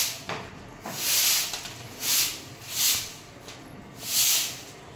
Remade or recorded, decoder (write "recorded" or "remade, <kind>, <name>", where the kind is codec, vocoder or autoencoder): recorded